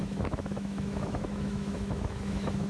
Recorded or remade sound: remade